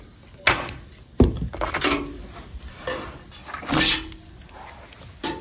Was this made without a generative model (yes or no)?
yes